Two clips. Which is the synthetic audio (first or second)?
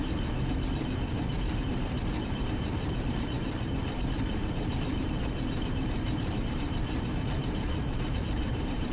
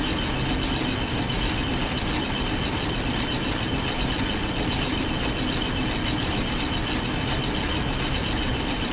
first